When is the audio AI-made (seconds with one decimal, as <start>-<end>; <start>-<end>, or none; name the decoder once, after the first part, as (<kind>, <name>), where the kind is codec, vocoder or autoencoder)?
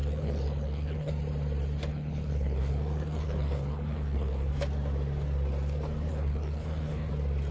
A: 0.0-1.1 (codec, HILCodec); 1.9-4.5; 6.1-7.1